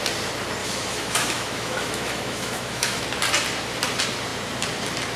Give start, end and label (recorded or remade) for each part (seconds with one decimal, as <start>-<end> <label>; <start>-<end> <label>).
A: 0.0-0.6 recorded; 0.6-3.0 remade; 3.0-5.2 recorded